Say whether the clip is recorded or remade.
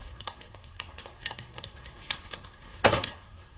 remade